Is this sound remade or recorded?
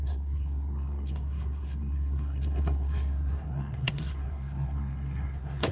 remade